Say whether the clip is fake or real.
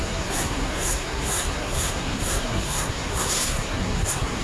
fake